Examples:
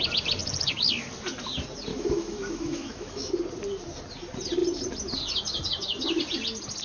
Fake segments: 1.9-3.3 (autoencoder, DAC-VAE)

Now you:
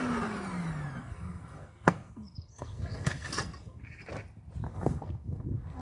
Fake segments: 1.0-4.0 (codec, SNAC); 4.7-5.8